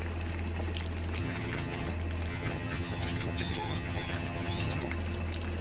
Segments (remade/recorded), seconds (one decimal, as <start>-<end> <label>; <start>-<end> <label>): 0.0-1.2 recorded; 1.2-1.9 remade; 1.9-2.3 recorded; 2.3-4.9 remade; 4.9-5.6 recorded